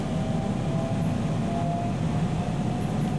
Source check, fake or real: real